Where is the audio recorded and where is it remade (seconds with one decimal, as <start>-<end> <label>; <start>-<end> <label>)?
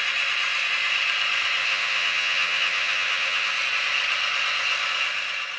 0.0-1.6 recorded; 1.6-3.5 remade; 3.5-5.6 recorded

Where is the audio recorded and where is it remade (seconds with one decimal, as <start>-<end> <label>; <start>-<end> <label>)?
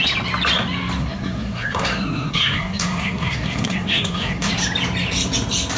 0.0-1.0 recorded; 1.0-4.5 remade; 4.5-5.8 recorded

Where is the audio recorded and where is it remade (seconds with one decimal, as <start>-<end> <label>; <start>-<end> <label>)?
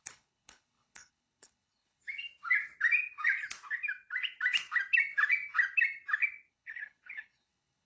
0.0-2.0 remade; 2.0-6.5 recorded; 6.5-7.9 remade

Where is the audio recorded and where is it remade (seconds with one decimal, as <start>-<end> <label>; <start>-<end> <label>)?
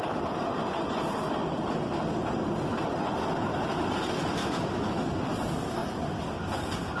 0.0-4.4 recorded; 4.4-5.0 remade; 5.0-7.0 recorded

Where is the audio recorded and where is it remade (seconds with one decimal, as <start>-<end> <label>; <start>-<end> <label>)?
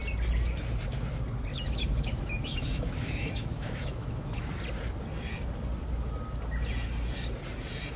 0.0-1.5 recorded; 1.5-4.5 remade; 4.5-8.0 recorded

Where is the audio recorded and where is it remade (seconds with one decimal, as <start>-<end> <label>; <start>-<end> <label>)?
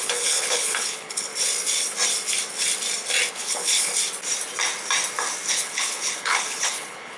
0.0-1.3 remade; 1.3-3.3 recorded; 3.3-3.9 remade; 3.9-5.5 recorded; 5.5-7.2 remade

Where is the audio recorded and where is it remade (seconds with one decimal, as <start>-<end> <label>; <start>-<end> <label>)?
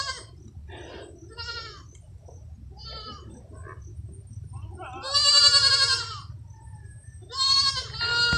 0.0-8.4 recorded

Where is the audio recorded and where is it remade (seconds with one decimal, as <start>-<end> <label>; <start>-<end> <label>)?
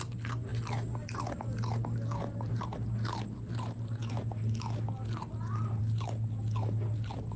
0.0-7.4 recorded